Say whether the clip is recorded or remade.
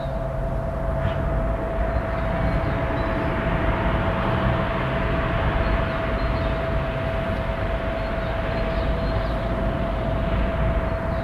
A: recorded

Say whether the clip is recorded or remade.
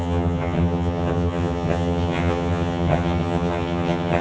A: remade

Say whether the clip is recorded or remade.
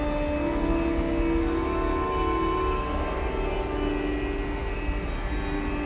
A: recorded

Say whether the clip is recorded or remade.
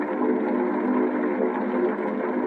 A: recorded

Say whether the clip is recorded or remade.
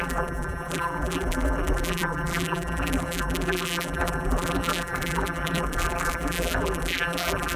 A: remade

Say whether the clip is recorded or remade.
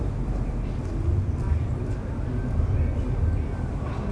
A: recorded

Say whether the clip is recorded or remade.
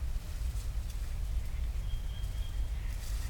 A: recorded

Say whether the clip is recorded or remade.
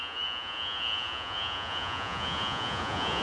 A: remade